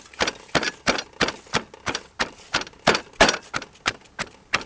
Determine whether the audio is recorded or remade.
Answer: recorded